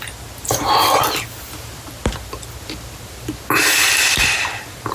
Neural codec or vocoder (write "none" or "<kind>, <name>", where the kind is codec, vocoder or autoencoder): none